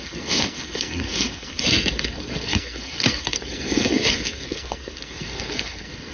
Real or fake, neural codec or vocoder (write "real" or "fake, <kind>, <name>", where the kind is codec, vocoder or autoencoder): fake, codec, SNAC